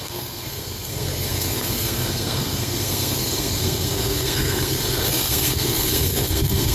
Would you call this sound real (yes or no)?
no